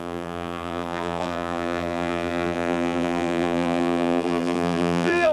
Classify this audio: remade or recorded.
remade